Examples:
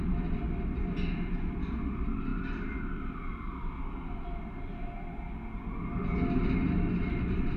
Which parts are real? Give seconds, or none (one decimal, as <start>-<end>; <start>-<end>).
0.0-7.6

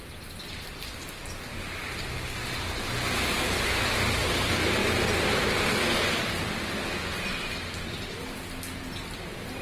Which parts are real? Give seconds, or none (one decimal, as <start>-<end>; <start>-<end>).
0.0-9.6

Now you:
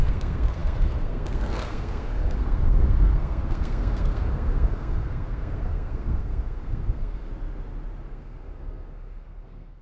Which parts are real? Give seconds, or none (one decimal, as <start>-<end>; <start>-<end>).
7.3-8.1

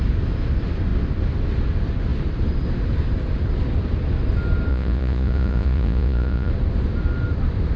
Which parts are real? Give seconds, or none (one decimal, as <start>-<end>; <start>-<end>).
0.0-4.7; 6.5-7.8

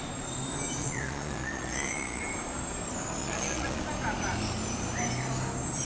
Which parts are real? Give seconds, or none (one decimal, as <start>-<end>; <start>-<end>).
0.0-0.8; 2.2-3.2; 3.8-5.8

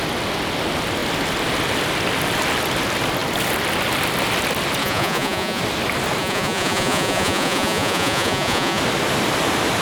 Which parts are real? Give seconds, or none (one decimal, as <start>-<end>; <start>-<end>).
0.0-4.8; 5.6-6.2; 8.8-9.8

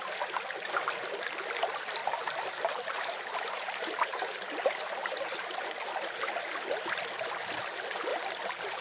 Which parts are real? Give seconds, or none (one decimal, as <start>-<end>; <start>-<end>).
0.0-2.0; 5.9-8.1

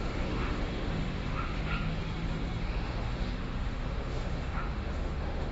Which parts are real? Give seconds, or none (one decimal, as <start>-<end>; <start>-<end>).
2.0-2.6